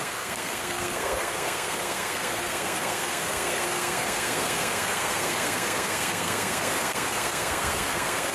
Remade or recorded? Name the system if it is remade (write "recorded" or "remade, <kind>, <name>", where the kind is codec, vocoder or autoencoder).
remade, codec, SNAC